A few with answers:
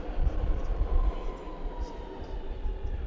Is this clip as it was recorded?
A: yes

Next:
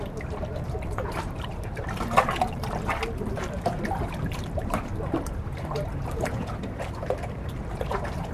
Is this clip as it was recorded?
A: no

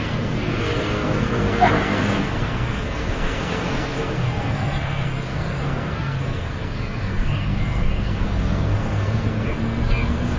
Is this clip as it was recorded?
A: no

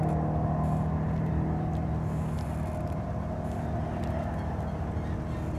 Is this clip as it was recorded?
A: yes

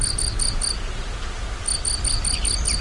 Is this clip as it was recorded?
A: yes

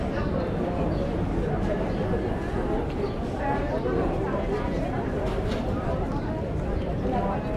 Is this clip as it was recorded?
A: yes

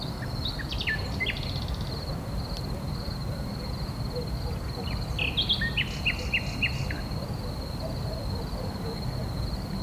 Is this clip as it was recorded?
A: yes